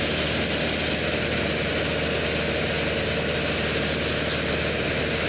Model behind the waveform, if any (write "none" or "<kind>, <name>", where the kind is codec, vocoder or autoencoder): none